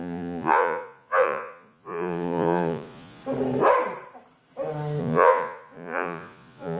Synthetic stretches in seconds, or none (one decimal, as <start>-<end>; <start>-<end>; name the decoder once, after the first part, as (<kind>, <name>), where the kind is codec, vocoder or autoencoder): 0.0-3.2 (vocoder, Vocos); 5.0-6.8